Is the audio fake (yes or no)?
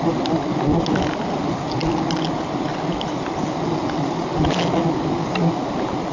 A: no